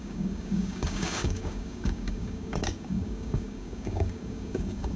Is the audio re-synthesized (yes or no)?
yes